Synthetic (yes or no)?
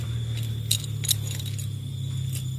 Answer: no